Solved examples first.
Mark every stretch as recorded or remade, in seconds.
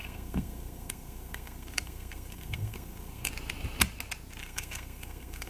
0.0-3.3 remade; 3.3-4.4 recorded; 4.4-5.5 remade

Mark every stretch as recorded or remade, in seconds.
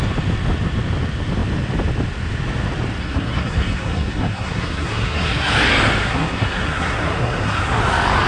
0.0-3.0 recorded; 3.0-5.5 remade; 5.5-6.0 recorded; 6.0-7.8 remade; 7.8-8.3 recorded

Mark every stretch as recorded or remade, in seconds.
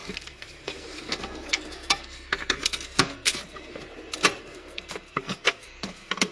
0.0-3.8 remade; 3.8-4.4 recorded; 4.4-6.3 remade